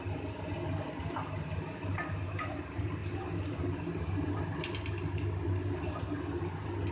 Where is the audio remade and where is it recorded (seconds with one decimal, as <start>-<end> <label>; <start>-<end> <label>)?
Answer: 0.0-6.9 recorded